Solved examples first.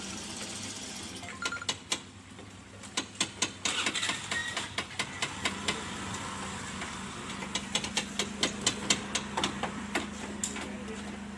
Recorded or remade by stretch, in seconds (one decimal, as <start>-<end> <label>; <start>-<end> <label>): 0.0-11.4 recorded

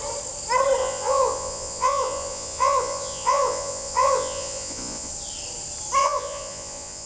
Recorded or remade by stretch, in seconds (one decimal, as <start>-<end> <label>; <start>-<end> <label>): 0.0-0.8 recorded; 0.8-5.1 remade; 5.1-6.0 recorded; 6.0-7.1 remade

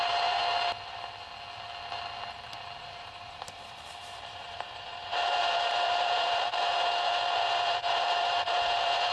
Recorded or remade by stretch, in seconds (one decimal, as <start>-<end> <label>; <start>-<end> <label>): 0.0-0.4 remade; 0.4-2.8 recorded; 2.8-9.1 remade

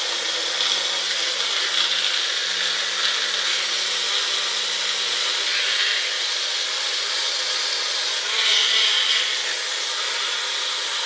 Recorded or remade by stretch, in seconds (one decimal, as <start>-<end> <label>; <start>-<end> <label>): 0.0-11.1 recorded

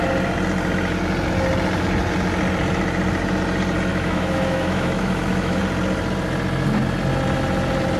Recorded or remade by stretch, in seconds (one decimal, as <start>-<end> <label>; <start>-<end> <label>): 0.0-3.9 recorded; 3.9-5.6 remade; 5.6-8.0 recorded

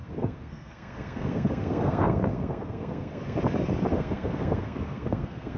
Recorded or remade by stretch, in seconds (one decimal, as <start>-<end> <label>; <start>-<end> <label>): 0.0-3.4 remade; 3.4-3.9 recorded; 3.9-5.6 remade

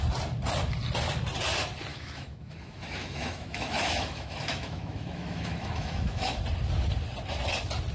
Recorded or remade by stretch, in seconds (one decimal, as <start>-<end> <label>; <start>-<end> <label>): 0.0-1.9 recorded; 1.9-6.4 remade; 6.4-7.9 recorded